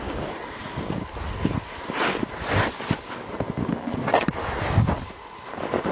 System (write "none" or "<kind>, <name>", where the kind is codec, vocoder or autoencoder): none